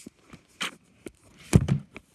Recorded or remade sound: recorded